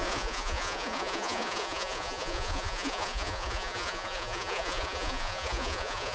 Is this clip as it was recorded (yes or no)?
no